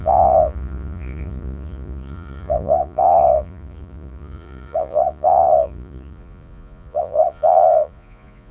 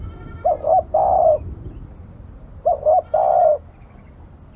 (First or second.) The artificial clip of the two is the first